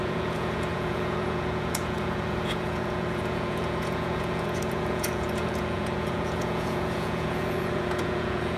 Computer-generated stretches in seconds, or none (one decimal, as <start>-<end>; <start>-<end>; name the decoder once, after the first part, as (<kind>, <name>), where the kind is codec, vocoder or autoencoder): 0.0-8.6 (vocoder, Vocos)